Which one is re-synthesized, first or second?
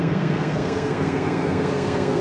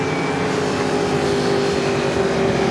first